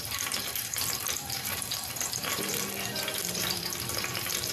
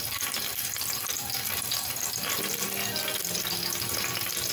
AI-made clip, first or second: first